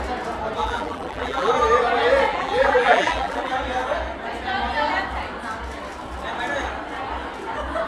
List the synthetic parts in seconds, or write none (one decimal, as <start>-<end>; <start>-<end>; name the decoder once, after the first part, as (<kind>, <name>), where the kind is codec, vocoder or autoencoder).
0.6-1.5 (vocoder, BigVGAN v2); 2.3-3.5